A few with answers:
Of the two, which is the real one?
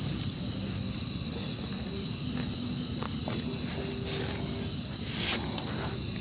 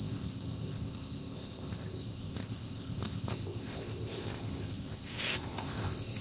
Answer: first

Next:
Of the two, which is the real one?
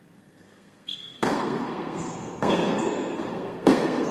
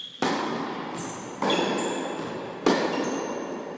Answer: second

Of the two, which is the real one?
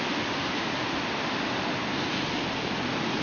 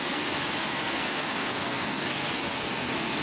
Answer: first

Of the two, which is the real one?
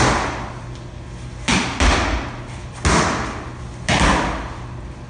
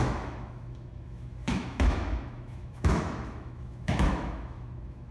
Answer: first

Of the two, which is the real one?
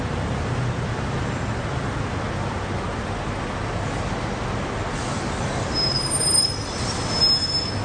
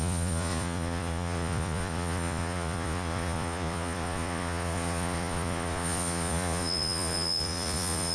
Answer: first